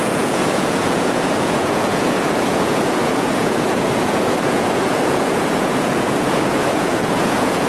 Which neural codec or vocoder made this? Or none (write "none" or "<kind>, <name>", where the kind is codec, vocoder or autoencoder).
vocoder, Vocos